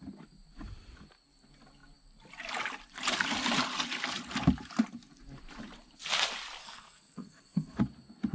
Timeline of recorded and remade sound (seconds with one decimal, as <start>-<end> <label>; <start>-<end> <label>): 0.0-6.6 recorded; 6.6-7.8 remade; 7.8-8.3 recorded